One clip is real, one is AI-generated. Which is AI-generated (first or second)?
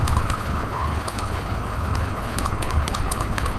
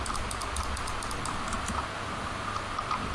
first